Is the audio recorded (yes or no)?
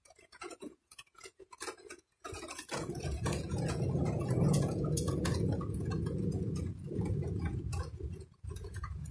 no